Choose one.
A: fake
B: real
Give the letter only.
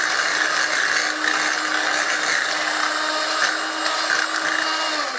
B